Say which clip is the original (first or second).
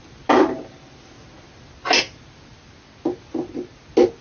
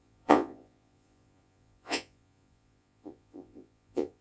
first